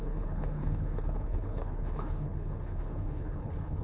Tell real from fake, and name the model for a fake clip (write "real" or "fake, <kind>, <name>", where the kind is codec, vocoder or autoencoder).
fake, codec, HILCodec